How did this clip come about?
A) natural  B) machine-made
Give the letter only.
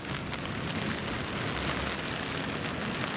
A